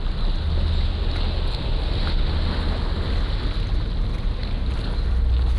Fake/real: real